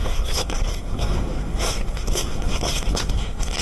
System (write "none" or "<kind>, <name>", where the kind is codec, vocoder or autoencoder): codec, SNAC